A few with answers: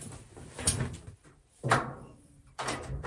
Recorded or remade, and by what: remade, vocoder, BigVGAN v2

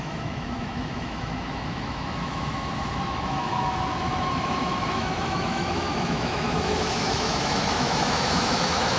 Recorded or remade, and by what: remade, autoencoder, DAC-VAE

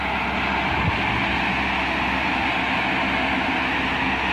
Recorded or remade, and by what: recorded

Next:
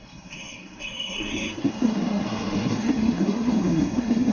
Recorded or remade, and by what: remade, codec, SNAC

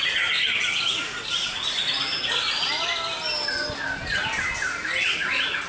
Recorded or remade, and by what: recorded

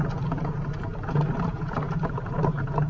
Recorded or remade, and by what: recorded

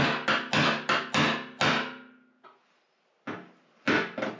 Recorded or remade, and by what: recorded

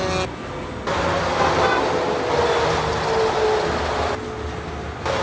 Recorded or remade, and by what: recorded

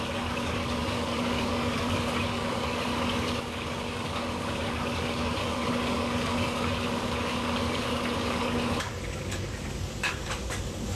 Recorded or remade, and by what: remade, codec, DAC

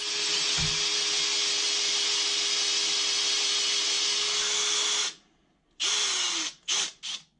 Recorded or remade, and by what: recorded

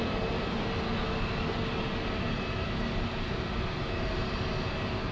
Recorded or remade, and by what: recorded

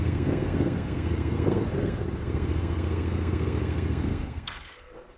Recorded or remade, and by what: remade, codec, SNAC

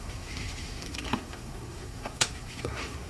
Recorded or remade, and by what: remade, codec, SNAC